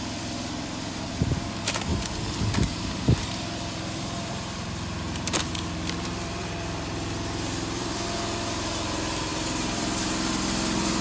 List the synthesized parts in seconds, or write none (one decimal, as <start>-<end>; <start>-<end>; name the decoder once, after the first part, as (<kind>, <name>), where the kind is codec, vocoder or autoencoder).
0.0-1.9 (vocoder, BigVGAN v2); 2.6-11.0